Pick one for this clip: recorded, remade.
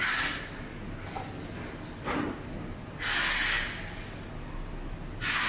recorded